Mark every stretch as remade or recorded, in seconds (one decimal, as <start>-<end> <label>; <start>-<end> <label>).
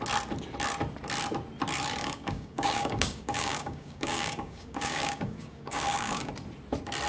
0.0-2.0 recorded; 2.0-6.3 remade; 6.3-7.1 recorded